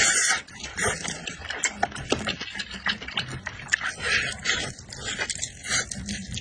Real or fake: real